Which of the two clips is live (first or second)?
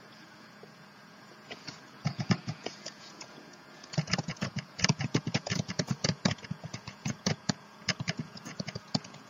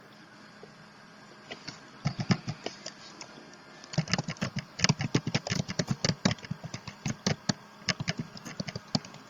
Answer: second